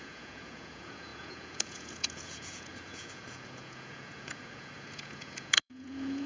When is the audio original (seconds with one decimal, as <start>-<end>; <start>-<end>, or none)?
none